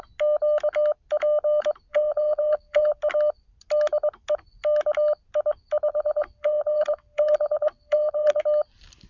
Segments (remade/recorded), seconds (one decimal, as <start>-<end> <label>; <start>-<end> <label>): 0.0-1.9 recorded; 1.9-3.0 remade; 3.0-5.9 recorded; 5.9-8.4 remade; 8.4-9.1 recorded